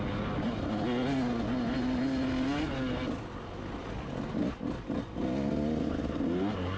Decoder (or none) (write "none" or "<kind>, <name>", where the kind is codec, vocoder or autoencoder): none